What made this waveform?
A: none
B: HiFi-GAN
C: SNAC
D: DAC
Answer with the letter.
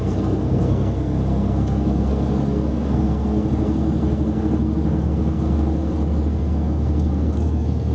C